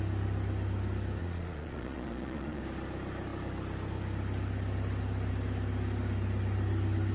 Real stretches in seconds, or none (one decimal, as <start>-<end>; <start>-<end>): 0.0-1.2; 2.6-7.1